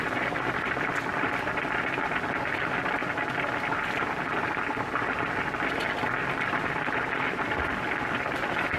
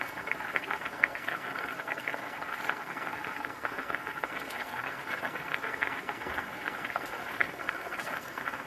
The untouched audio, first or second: first